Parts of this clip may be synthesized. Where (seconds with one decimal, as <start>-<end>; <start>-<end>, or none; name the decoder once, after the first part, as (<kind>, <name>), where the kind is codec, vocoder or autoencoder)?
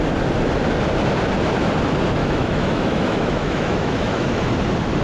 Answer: 2.2-4.5 (autoencoder, DAC-VAE)